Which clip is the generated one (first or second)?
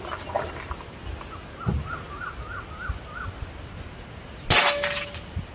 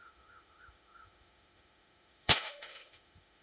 second